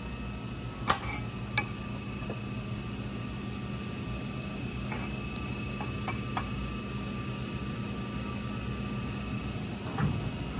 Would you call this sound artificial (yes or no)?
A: no